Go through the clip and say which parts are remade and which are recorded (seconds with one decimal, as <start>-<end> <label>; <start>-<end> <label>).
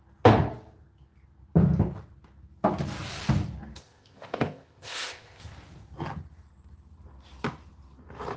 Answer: 0.0-3.8 recorded; 3.8-5.4 remade; 5.4-8.4 recorded